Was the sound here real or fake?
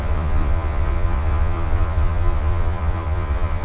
fake